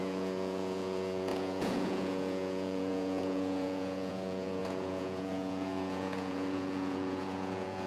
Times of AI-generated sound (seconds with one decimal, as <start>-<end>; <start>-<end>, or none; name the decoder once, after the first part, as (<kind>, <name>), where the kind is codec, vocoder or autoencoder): 0.0-7.9 (vocoder, Vocos)